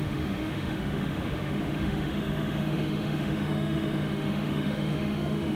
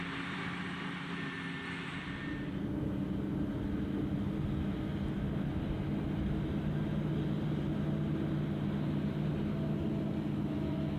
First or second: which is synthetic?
first